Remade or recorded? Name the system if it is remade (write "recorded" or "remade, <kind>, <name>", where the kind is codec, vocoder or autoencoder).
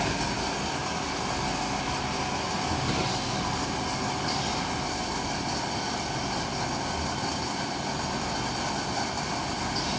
recorded